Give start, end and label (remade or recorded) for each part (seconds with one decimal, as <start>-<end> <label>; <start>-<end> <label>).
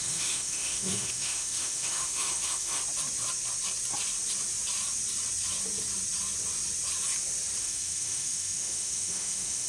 0.0-2.8 remade; 2.8-7.6 recorded; 7.6-9.7 remade